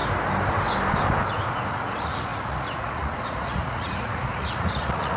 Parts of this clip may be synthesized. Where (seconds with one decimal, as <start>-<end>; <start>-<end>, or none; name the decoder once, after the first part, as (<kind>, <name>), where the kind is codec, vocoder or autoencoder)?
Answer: 1.7-5.2 (vocoder, Vocos)